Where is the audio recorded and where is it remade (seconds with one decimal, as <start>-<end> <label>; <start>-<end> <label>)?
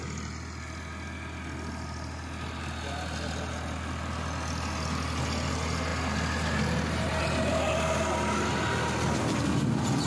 0.0-10.1 recorded